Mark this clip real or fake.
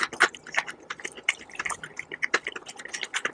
real